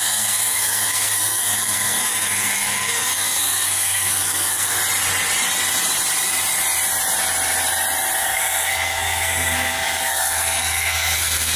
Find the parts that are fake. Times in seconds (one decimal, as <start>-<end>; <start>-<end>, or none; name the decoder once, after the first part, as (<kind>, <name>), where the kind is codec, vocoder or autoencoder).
0.0-4.8 (codec, SNAC); 8.2-11.6